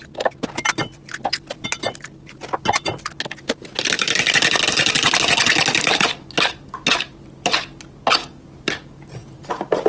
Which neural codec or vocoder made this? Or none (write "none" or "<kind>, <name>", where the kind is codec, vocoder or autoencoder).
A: none